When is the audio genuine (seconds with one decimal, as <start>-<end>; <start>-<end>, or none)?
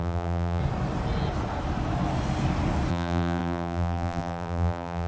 0.6-2.9